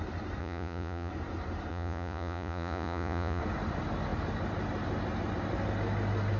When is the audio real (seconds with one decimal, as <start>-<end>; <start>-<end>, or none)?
0.0-0.4; 1.1-1.7; 3.4-6.4